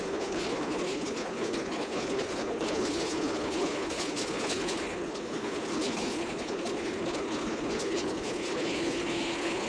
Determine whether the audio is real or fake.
fake